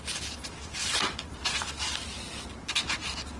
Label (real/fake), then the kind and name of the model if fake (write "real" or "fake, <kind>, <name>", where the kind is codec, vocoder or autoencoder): real